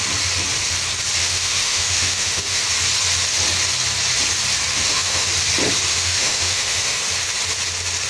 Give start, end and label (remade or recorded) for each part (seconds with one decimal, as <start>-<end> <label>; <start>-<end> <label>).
0.0-1.2 recorded; 1.2-2.6 remade; 2.6-4.7 recorded; 4.7-5.3 remade; 5.3-5.9 recorded; 5.9-7.0 remade; 7.0-8.1 recorded